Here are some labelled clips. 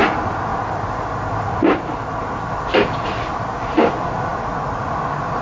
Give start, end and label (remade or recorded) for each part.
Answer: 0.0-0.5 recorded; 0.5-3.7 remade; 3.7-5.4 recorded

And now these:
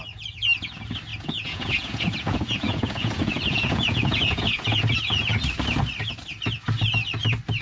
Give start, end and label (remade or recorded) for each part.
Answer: 0.0-1.1 recorded; 1.1-4.8 remade; 4.8-7.6 recorded

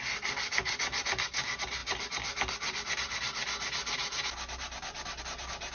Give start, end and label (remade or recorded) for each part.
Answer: 0.0-5.7 recorded

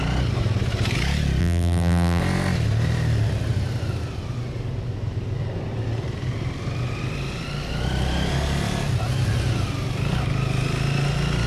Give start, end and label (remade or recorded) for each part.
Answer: 0.0-1.4 recorded; 1.4-2.2 remade; 2.2-11.5 recorded

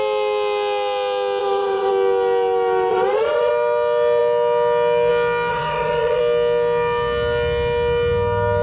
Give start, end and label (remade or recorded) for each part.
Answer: 0.0-1.4 recorded; 1.4-1.9 remade; 1.9-2.9 recorded; 2.9-3.5 remade; 3.5-5.5 recorded; 5.5-6.2 remade; 6.2-8.6 recorded